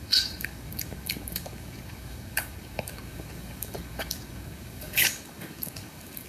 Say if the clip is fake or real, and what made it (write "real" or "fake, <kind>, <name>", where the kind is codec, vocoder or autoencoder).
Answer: fake, codec, DAC